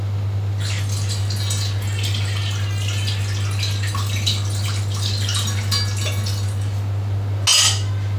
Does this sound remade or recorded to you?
recorded